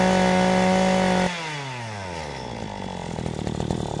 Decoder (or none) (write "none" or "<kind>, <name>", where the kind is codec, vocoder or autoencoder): none